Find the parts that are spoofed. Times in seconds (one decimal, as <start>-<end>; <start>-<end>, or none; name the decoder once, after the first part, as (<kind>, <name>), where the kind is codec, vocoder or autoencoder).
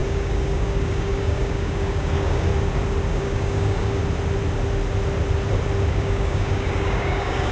0.0-2.5 (codec, DAC); 3.1-4.0; 5.9-7.5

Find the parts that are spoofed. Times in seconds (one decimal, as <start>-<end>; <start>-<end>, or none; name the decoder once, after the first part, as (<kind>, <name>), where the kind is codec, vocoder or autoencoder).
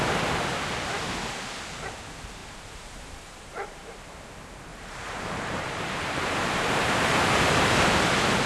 2.4-4.0 (vocoder, BigVGAN v2); 4.7-7.8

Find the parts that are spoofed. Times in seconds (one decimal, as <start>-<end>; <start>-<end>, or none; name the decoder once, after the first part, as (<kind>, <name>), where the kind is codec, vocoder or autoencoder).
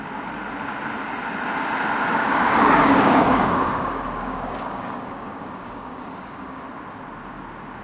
2.2-6.6 (codec, DAC)